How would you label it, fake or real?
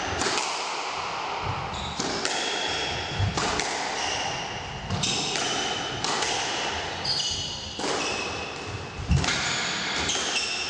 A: real